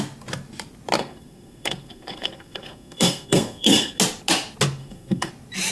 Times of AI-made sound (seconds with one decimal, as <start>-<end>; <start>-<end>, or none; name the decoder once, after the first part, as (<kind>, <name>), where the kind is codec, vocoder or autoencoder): 1.0-4.0 (codec, SNAC); 4.8-5.3